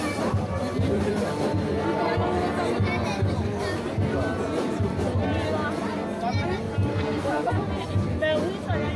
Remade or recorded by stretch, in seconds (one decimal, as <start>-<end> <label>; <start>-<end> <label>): 0.0-6.9 recorded; 6.9-7.5 remade; 7.5-9.0 recorded